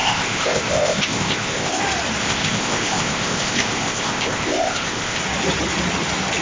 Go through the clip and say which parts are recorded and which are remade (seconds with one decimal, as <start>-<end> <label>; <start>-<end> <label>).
0.0-1.8 remade; 1.8-2.2 recorded; 2.2-5.2 remade; 5.2-6.4 recorded